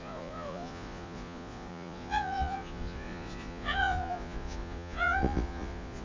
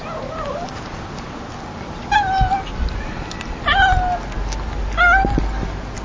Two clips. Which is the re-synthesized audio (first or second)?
first